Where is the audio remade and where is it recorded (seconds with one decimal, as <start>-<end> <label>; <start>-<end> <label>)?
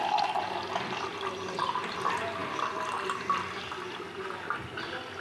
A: 0.0-1.1 recorded; 1.1-1.6 remade; 1.6-2.4 recorded; 2.4-3.3 remade; 3.3-5.2 recorded